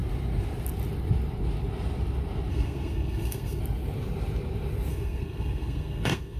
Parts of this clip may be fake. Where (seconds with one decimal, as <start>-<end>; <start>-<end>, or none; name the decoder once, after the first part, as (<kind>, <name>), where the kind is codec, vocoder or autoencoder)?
2.5-3.6 (codec, SNAC); 4.9-6.4